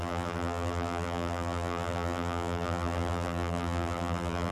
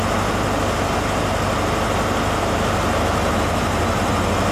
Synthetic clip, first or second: first